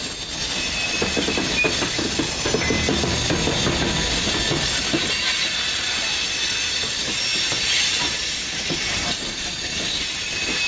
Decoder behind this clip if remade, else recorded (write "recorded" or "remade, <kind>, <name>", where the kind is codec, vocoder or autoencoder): recorded